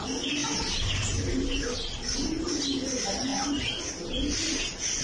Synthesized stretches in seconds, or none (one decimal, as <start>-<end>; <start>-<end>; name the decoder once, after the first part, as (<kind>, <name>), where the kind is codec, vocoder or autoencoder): none